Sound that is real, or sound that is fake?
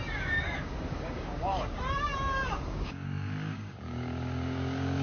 fake